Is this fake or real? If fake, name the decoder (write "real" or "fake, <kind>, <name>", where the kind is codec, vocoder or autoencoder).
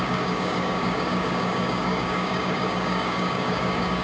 fake, codec, DAC